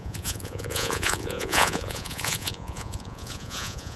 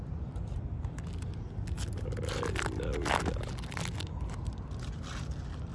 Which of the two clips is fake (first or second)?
first